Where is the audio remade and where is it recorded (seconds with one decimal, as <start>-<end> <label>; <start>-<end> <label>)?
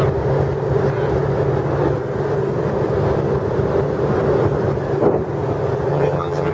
0.0-5.9 recorded; 5.9-6.5 remade